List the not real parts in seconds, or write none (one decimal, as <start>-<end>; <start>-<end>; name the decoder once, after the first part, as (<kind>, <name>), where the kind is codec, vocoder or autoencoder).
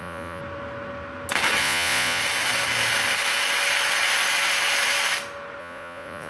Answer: 0.0-0.4 (vocoder, Vocos); 1.6-2.2; 5.6-6.3